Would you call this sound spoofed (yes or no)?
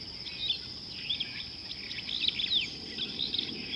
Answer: no